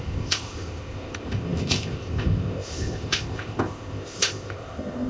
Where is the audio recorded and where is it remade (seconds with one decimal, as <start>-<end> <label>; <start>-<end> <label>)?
0.0-5.1 remade